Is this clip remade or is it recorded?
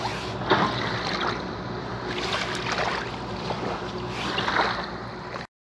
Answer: recorded